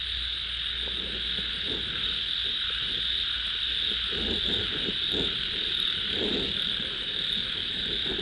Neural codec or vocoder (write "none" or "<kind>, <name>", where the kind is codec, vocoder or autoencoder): none